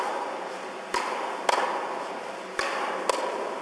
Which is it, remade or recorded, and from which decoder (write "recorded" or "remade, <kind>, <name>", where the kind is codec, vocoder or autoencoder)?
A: recorded